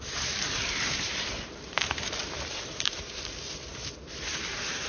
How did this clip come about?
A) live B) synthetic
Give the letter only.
B